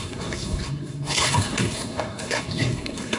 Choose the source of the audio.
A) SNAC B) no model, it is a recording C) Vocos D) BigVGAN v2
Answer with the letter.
A